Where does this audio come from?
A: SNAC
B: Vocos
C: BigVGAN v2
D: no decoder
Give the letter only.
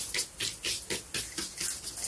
D